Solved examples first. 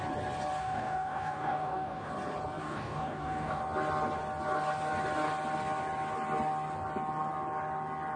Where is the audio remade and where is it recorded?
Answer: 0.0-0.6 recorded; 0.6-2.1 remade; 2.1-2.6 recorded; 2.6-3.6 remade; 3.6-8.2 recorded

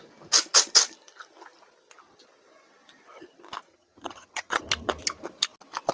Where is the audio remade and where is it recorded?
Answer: 0.0-3.7 recorded; 3.7-4.6 remade; 4.6-5.9 recorded

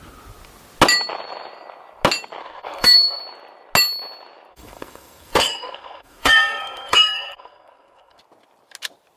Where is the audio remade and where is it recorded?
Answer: 0.0-2.4 recorded; 2.4-3.2 remade; 3.2-4.5 recorded; 4.5-8.2 remade; 8.2-9.2 recorded

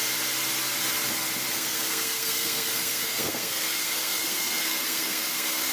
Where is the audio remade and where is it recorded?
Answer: 0.0-1.5 recorded; 1.5-5.7 remade

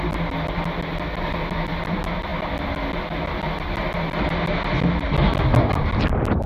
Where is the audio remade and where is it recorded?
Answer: 0.0-6.5 recorded

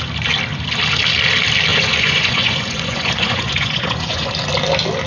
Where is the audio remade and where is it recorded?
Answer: 0.0-1.7 recorded; 1.7-4.3 remade; 4.3-5.1 recorded